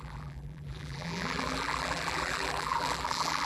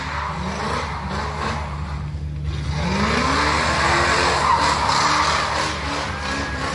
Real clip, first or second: second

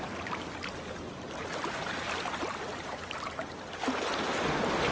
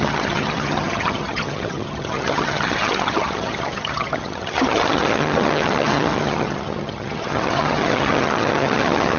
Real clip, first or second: first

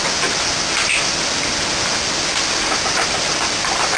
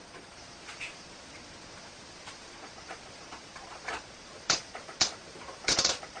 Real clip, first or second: first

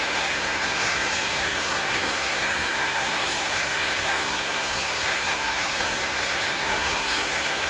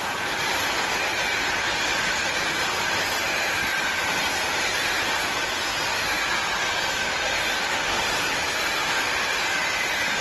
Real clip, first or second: second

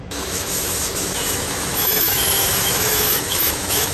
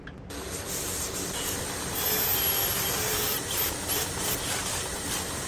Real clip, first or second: second